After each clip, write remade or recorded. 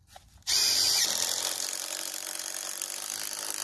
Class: remade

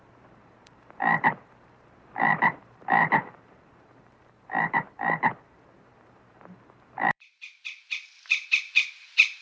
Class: remade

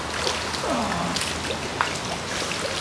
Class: recorded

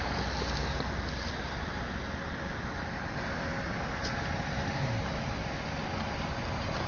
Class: recorded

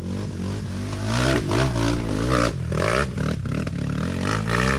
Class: recorded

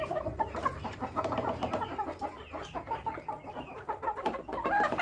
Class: remade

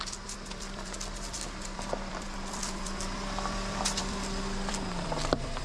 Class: remade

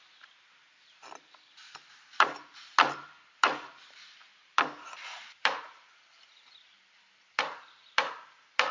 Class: remade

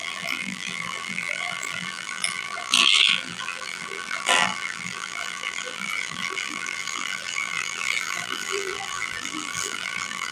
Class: remade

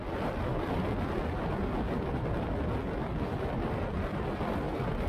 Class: recorded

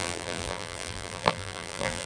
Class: remade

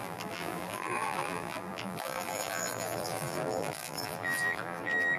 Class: remade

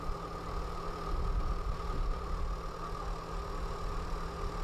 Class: recorded